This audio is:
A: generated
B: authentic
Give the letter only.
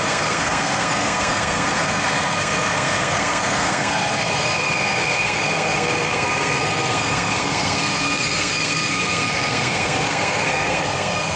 A